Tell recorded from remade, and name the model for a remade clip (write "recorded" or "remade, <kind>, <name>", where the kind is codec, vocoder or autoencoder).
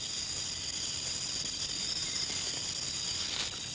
recorded